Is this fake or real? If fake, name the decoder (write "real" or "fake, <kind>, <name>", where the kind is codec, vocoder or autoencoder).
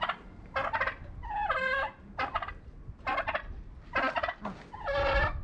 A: real